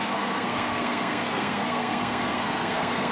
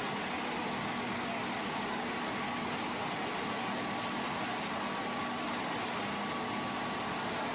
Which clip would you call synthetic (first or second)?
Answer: first